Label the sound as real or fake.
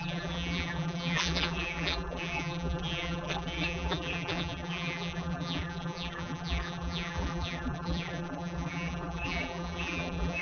fake